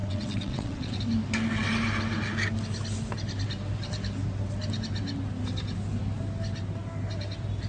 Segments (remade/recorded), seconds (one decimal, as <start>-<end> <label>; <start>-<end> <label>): 0.0-1.0 remade; 1.0-7.7 recorded